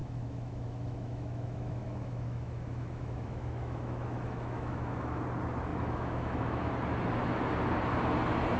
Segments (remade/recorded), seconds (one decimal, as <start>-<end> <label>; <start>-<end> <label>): 0.0-5.2 remade; 5.2-5.7 recorded; 5.7-6.7 remade; 6.7-8.6 recorded